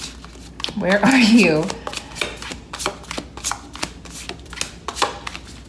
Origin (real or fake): real